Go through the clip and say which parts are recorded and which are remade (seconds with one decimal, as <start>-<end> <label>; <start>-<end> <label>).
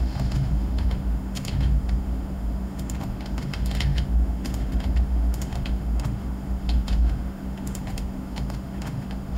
0.0-9.4 remade